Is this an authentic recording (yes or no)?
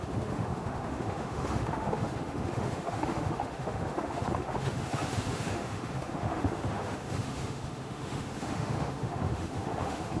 no